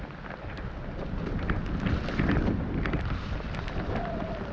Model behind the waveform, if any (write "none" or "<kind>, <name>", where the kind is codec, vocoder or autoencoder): none